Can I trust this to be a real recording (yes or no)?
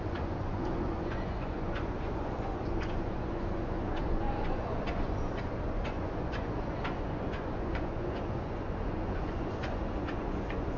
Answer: no